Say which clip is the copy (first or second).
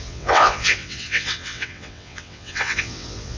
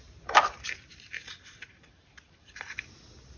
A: first